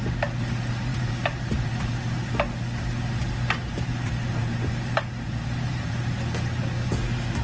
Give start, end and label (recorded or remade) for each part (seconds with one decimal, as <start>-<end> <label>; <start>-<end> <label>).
0.0-0.9 recorded; 0.9-2.0 remade; 2.0-4.4 recorded; 4.4-5.9 remade; 5.9-7.4 recorded